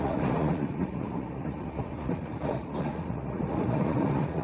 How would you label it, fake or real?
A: fake